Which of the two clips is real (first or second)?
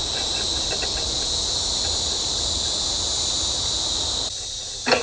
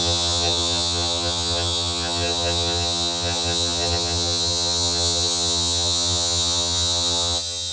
first